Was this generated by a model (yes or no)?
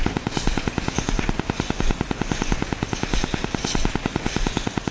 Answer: yes